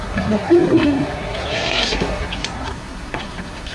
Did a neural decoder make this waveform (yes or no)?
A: yes